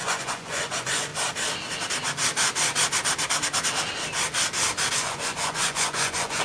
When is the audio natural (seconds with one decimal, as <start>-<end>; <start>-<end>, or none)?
1.1-4.9